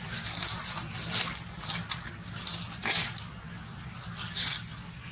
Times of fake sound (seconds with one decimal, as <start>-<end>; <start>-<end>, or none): none